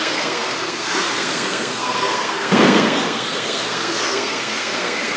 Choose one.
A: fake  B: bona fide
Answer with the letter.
A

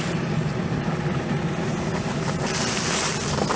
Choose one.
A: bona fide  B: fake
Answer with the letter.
A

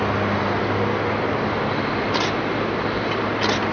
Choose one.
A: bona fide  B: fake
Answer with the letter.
A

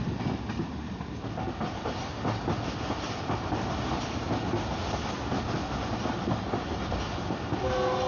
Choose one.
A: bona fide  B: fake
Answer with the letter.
A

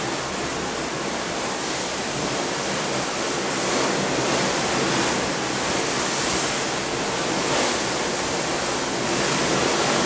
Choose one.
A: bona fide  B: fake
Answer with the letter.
A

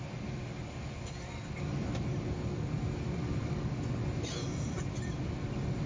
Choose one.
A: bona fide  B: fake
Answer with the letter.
A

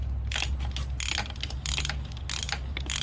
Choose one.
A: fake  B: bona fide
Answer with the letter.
B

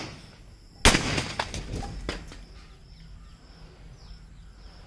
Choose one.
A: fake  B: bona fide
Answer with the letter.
B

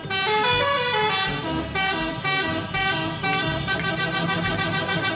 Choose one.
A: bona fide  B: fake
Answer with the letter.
A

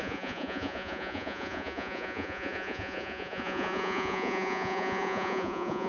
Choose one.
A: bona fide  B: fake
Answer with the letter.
B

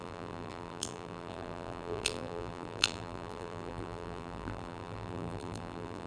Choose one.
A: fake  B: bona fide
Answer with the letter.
A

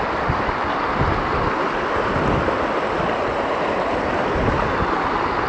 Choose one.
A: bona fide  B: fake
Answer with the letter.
A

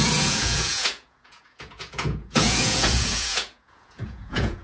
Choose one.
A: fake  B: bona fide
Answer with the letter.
A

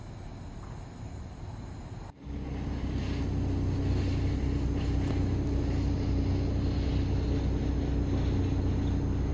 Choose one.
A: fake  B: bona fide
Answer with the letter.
B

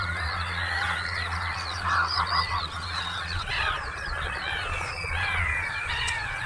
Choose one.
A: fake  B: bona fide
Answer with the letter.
A